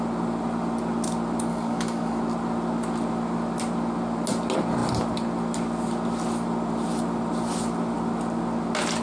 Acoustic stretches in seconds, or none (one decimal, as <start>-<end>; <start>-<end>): 0.0-1.5; 2.2-9.0